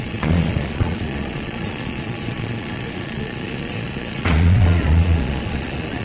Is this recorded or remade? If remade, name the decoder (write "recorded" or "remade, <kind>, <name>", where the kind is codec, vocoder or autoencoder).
remade, vocoder, Vocos